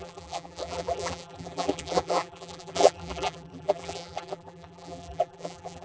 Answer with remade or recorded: remade